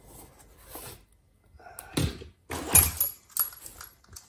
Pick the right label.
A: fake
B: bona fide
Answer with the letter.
B